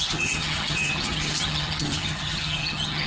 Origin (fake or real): fake